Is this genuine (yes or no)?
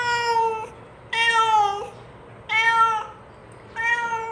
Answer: yes